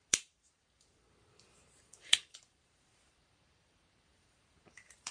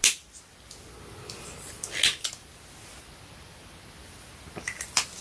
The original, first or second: second